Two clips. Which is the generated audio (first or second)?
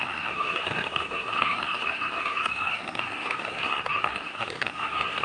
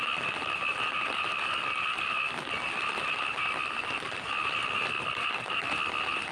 first